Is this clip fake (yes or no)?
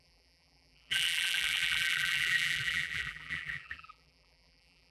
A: yes